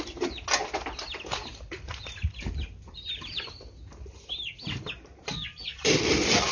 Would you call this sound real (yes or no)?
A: yes